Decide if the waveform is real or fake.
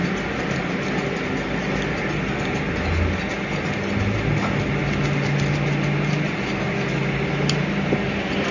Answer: real